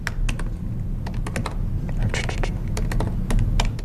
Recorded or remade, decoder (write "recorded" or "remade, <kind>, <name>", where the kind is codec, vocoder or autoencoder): recorded